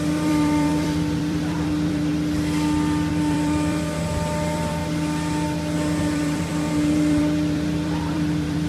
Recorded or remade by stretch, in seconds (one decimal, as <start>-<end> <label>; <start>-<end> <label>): 0.0-2.1 remade; 2.1-3.1 recorded; 3.1-4.8 remade; 4.8-6.0 recorded; 6.0-8.7 remade